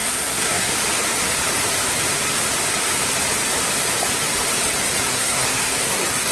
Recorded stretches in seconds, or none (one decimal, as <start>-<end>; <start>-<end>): 0.7-5.1